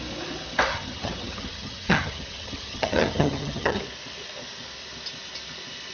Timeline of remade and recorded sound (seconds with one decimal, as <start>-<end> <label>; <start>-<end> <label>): 0.0-0.7 recorded; 0.7-3.8 remade; 3.8-5.9 recorded